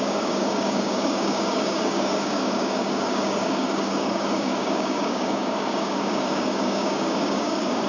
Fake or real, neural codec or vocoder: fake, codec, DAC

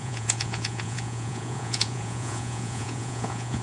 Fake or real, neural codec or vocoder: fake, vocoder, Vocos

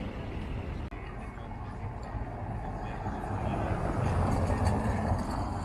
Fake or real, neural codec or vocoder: real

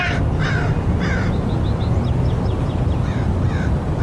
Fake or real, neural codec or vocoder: real